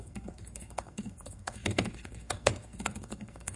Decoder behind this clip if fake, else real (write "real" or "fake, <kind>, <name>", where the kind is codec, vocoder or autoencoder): fake, codec, SNAC